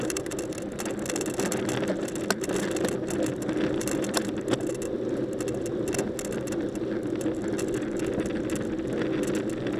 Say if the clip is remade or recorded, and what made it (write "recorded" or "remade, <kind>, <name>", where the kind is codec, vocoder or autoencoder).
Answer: recorded